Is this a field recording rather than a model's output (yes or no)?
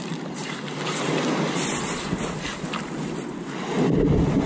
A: yes